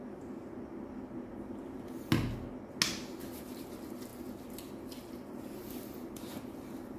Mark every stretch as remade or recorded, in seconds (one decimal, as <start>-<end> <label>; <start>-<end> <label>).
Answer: 0.0-7.0 recorded